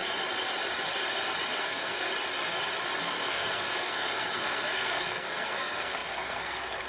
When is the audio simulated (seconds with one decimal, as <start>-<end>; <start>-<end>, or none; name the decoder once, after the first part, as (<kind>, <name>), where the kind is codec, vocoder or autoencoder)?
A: 1.6-2.1 (codec, SNAC); 3.0-6.9